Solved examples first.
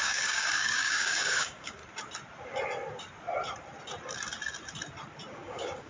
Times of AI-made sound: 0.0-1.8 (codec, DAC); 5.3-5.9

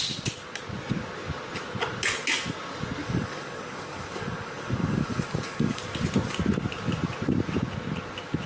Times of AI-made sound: 3.0-5.8 (codec, DAC)

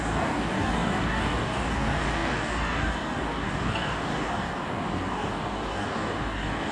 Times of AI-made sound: 0.0-6.7 (codec, DAC)